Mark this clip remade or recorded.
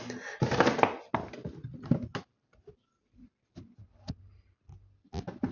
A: recorded